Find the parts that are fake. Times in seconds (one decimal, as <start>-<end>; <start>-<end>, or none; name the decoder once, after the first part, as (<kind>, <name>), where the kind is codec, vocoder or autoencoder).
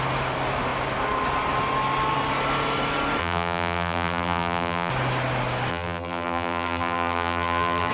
3.2-4.9 (vocoder, BigVGAN v2); 5.7-7.9